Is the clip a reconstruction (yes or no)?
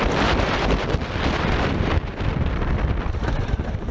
yes